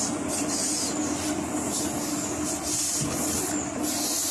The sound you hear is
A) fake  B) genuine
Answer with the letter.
B